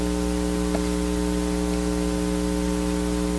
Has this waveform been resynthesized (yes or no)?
no